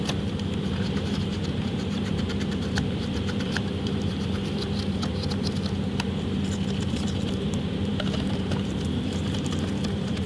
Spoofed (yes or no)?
yes